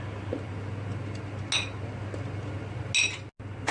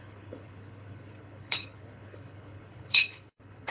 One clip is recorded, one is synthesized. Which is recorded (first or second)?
first